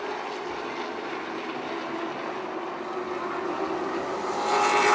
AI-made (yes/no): no